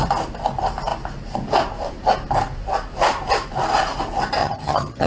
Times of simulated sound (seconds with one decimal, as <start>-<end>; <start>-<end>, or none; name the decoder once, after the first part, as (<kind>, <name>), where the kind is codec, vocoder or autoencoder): 4.4-5.1 (vocoder, HiFi-GAN)